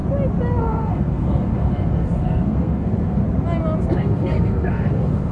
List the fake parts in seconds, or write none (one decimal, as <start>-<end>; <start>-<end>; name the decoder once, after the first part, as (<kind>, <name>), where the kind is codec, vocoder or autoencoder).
0.6-3.2 (codec, SNAC); 3.8-5.3